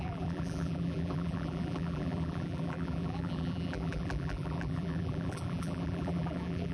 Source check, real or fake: fake